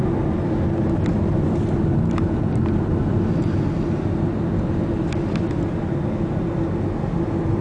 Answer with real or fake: real